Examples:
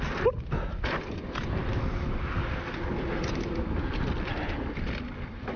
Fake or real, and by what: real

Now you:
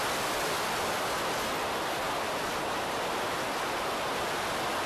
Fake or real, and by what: real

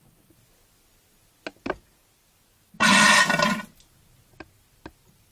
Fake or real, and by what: real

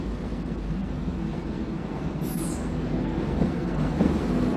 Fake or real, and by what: fake, codec, SNAC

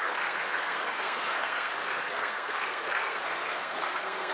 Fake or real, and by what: fake, codec, SNAC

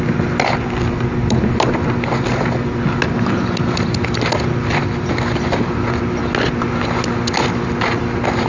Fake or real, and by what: real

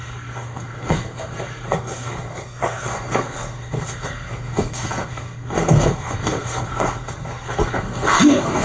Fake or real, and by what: fake, codec, SNAC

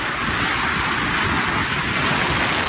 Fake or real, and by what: real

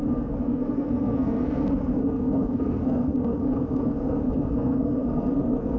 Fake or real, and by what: fake, codec, SNAC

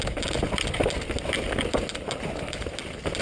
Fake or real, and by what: real